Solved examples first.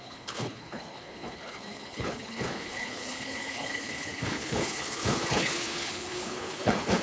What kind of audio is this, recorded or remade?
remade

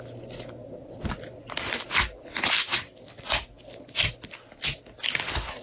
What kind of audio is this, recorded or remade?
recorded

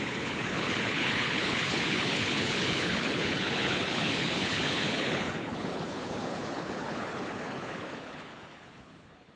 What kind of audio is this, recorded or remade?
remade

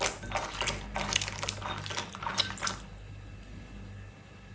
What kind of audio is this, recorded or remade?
recorded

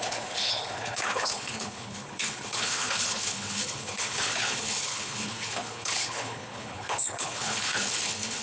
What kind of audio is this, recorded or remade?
remade